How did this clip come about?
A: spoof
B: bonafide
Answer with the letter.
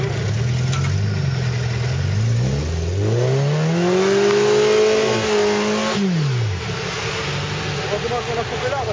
B